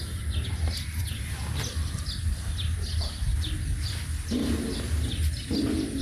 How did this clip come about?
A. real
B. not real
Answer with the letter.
A